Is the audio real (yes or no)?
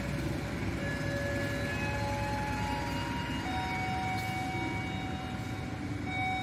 yes